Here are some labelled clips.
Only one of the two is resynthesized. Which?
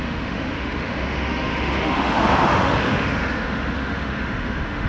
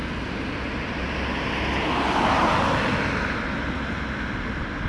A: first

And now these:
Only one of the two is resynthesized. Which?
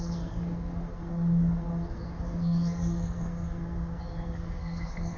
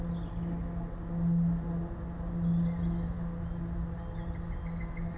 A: first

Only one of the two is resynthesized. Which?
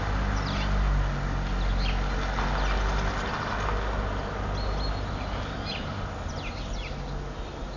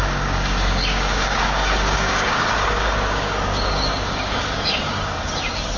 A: second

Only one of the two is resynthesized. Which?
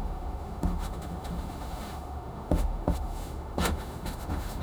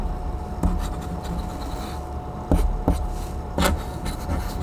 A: first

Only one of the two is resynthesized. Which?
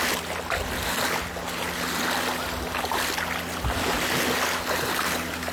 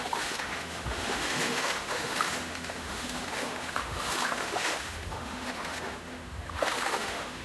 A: second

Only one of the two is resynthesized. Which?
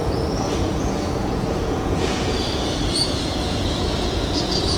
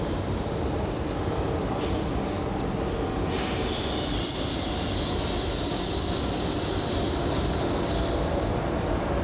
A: first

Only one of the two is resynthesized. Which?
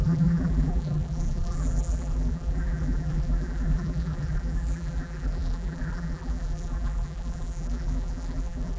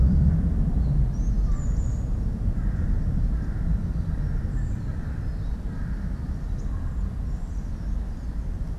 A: first